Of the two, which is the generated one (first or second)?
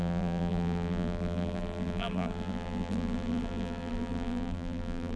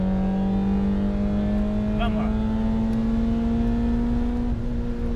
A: first